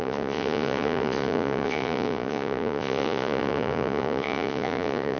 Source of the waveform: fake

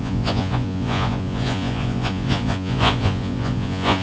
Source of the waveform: fake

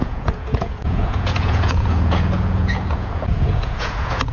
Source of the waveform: fake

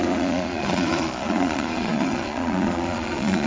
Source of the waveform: fake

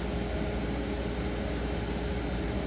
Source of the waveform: real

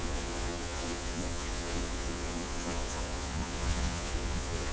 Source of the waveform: fake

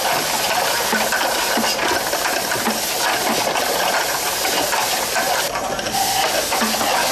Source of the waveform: real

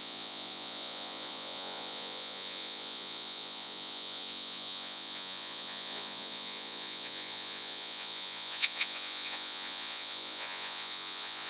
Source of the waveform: fake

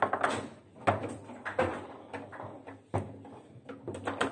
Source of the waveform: real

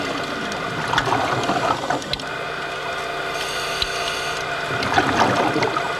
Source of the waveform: real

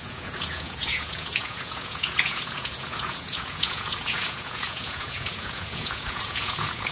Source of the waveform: fake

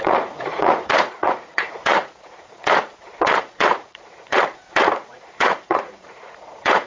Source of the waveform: fake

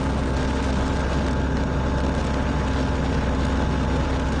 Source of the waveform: real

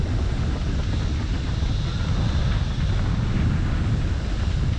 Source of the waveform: real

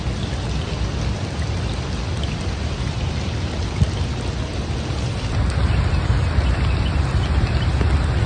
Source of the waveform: real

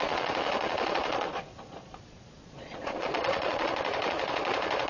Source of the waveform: fake